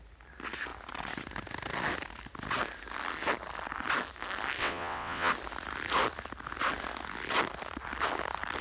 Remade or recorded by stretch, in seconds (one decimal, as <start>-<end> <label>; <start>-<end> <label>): 0.0-4.6 recorded; 4.6-5.3 remade; 5.3-8.6 recorded